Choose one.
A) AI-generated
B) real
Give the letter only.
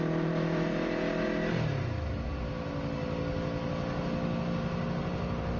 B